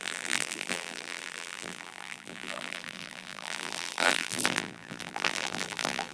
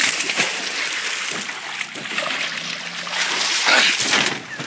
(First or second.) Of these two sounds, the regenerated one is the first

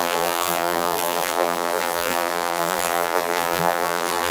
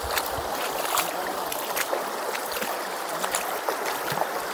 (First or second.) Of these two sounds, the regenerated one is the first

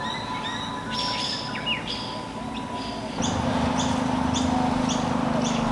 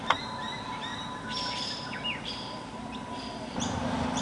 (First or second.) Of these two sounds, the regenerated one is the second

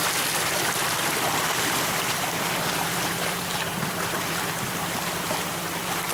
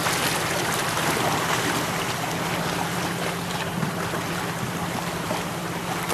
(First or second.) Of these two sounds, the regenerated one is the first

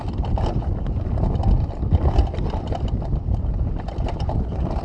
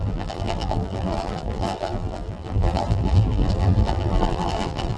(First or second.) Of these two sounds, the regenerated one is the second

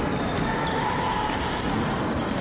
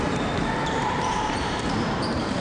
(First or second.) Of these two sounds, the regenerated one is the second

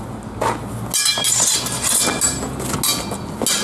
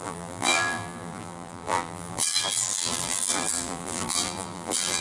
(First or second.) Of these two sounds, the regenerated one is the second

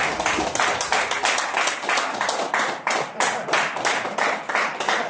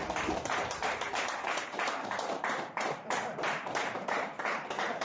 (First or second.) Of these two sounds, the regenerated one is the second